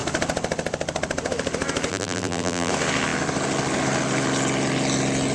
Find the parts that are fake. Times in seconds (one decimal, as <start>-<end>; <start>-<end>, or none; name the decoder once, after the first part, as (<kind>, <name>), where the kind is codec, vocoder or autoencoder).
1.9-2.7 (vocoder, BigVGAN v2)

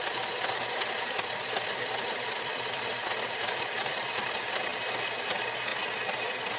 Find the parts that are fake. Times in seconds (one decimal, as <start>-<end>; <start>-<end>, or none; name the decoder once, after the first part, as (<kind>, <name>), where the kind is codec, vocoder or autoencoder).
0.0-4.7 (vocoder, BigVGAN v2); 5.2-5.7

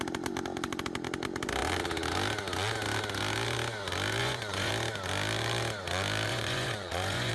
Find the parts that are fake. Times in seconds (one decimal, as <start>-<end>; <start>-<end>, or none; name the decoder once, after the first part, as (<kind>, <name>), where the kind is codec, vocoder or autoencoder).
4.2-4.7 (vocoder, Vocos); 6.3-7.3